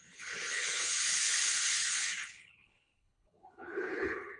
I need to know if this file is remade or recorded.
remade